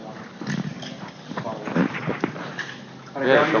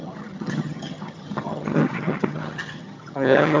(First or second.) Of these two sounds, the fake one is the second